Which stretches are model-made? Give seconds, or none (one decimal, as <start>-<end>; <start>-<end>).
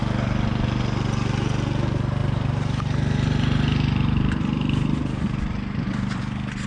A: 2.2-6.2